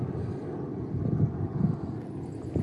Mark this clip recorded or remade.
recorded